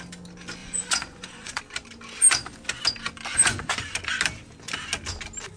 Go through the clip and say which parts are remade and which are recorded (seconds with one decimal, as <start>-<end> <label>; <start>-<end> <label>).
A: 0.0-0.6 recorded; 0.6-1.6 remade; 1.6-3.3 recorded; 3.3-4.0 remade; 4.0-5.6 recorded